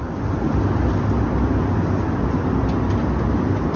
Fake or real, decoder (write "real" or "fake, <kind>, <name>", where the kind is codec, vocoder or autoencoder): real